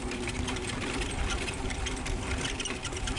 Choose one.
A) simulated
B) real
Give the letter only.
A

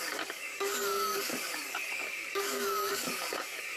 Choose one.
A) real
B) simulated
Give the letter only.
B